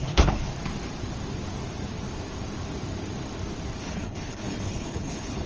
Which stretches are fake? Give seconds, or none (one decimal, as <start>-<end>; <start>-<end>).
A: 0.0-0.5; 3.8-5.5